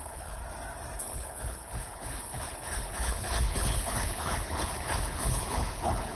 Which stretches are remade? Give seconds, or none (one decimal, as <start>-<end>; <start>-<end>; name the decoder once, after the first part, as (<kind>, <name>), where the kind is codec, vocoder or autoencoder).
0.0-0.4 (codec, HILCodec); 1.0-6.2